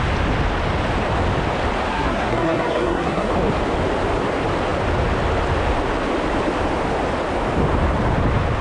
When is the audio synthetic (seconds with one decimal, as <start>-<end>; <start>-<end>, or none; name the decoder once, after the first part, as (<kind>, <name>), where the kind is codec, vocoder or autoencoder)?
1.9-3.3 (codec, SNAC)